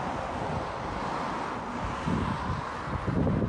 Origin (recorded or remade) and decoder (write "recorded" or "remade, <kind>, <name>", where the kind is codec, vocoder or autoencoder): recorded